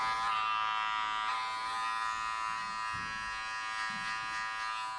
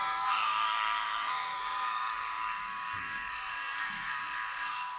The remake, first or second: second